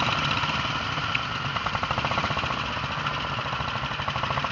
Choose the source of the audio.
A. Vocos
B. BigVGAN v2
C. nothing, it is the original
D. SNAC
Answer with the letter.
C